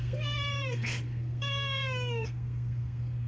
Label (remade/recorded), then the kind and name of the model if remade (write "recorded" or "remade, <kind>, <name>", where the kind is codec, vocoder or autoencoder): remade, codec, SNAC